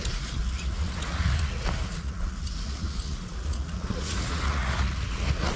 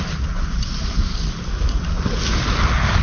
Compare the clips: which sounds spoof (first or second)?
first